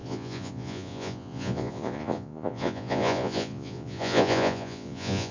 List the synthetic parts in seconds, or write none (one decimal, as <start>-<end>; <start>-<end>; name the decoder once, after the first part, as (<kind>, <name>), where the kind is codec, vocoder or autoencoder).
0.0-5.3 (vocoder, Vocos)